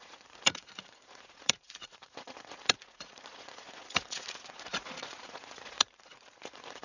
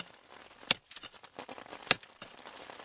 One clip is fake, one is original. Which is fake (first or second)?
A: first